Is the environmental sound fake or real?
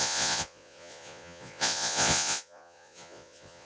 fake